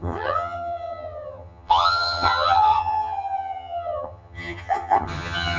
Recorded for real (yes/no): no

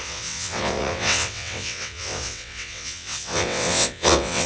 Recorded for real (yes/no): no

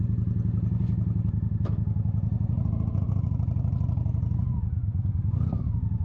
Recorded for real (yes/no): yes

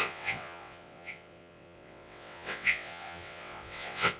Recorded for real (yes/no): no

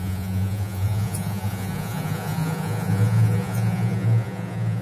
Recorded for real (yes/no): no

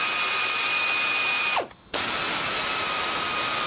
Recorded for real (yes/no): yes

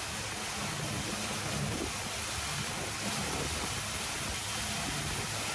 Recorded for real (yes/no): yes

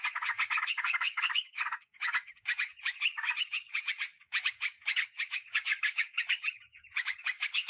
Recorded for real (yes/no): no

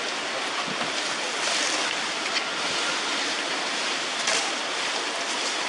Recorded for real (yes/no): yes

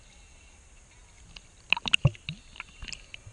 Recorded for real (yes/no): yes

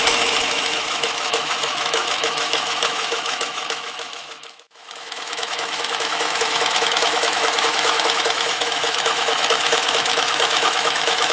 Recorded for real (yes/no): no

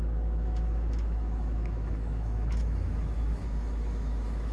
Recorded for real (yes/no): no